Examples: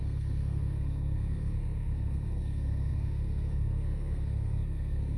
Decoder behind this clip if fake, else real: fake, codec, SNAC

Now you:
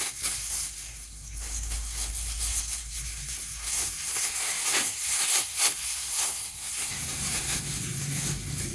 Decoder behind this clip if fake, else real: fake, codec, SNAC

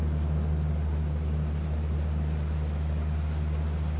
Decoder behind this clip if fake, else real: real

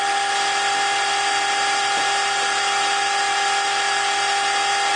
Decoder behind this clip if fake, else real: real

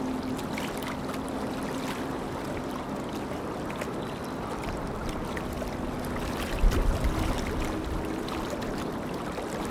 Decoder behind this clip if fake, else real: real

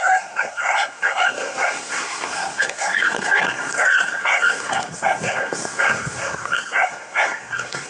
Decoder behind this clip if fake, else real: fake, codec, SNAC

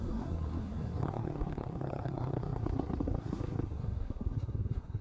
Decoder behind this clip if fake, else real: fake, codec, SNAC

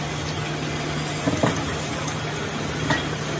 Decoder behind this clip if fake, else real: real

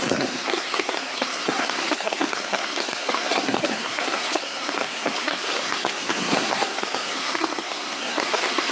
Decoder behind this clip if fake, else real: fake, codec, SNAC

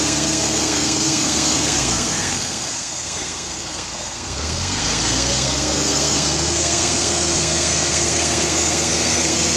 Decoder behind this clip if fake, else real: fake, codec, SNAC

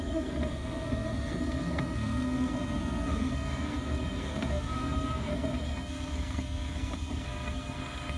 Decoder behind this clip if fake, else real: fake, codec, SNAC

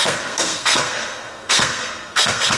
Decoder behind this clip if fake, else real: fake, codec, SNAC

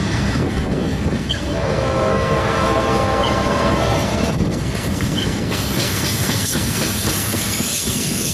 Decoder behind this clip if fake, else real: fake, codec, SNAC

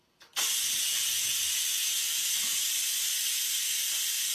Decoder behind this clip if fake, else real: real